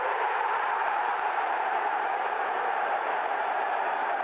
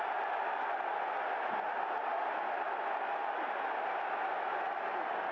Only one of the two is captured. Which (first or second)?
second